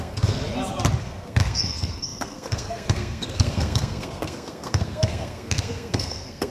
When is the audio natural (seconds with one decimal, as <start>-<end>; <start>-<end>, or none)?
0.4-1.0